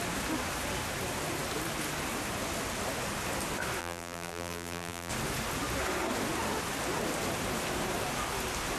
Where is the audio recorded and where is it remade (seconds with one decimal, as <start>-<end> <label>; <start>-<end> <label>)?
0.0-3.8 recorded; 3.8-5.1 remade; 5.1-8.8 recorded